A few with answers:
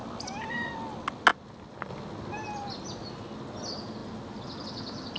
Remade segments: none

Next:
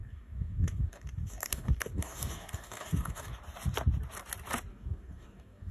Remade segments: 0.0-3.4 (codec, DAC); 4.7-5.7

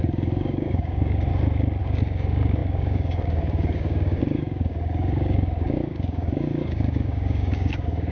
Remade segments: 0.0-1.3 (codec, DAC); 1.8-8.1